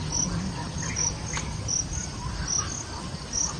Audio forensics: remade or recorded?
recorded